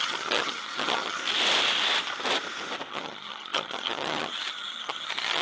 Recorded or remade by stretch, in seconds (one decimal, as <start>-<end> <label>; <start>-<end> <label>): 0.0-1.2 remade; 1.2-2.9 recorded; 2.9-5.4 remade